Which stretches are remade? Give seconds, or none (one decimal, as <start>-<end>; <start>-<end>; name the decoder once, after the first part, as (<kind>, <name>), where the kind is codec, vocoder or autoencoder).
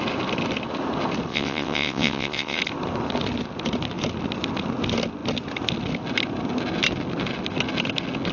1.3-2.6 (vocoder, WaveNeXt)